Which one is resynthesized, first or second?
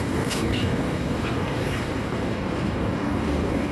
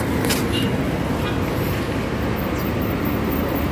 first